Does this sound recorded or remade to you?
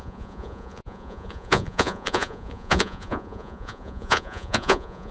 remade